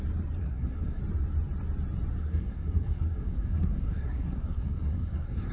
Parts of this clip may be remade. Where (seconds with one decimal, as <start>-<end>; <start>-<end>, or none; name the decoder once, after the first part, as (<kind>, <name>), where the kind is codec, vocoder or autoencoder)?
0.4-1.0 (codec, SNAC); 2.2-5.5